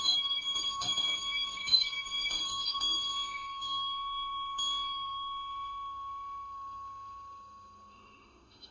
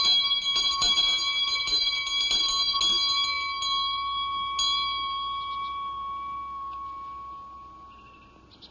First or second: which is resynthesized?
first